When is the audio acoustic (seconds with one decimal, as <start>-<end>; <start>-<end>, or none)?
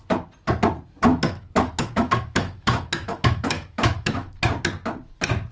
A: 0.0-1.1; 4.4-5.5